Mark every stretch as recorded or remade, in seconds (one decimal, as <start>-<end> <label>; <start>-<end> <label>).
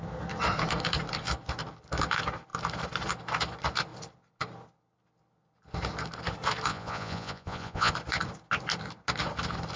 0.0-6.7 recorded; 6.7-7.9 remade; 7.9-9.8 recorded